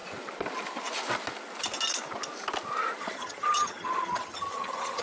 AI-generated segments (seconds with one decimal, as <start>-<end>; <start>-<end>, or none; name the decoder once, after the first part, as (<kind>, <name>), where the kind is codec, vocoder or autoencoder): 3.0-5.0 (vocoder, HiFi-GAN)